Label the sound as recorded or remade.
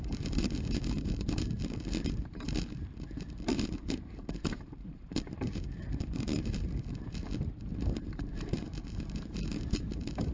remade